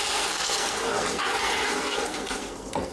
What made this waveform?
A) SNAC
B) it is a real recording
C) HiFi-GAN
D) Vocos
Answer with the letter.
A